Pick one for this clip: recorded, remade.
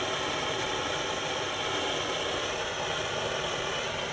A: recorded